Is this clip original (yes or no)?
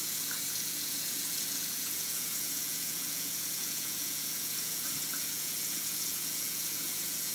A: no